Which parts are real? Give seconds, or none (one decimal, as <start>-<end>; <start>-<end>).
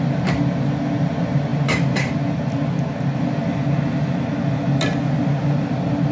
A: 0.0-6.1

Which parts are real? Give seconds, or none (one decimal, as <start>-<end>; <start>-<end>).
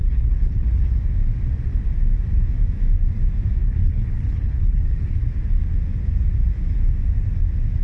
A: 1.0-3.6; 5.2-7.8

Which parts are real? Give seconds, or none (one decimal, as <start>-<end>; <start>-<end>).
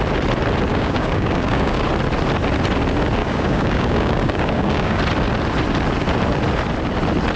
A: 0.0-0.7; 1.8-3.2; 5.0-7.4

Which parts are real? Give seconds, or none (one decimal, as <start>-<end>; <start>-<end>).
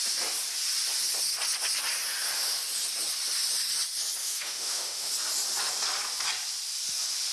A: 0.0-4.2; 5.1-7.3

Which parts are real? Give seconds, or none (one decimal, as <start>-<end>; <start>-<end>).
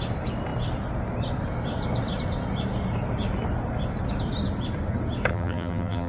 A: 0.0-5.3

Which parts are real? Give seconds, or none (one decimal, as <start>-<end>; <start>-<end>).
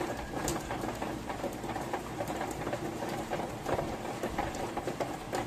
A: 0.0-0.5; 3.8-5.5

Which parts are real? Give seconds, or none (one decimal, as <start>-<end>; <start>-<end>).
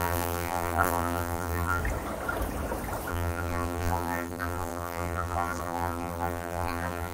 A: 1.8-3.1